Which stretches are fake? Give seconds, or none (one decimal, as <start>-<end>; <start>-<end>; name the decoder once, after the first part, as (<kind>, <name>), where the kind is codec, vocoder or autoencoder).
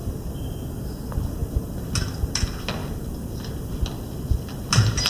none